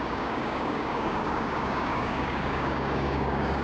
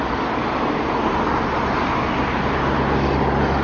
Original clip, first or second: second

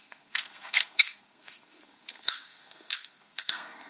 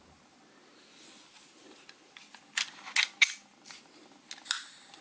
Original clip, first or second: second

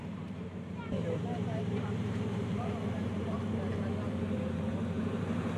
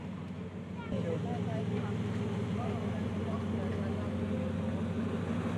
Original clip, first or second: second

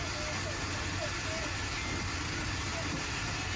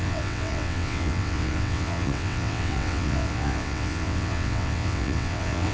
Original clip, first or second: first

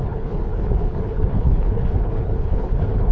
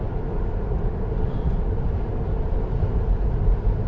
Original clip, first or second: second